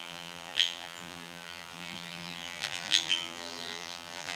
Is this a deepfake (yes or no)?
yes